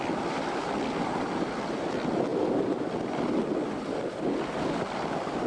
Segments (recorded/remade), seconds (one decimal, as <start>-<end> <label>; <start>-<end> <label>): 0.0-5.5 recorded